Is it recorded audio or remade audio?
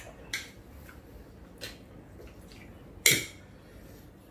recorded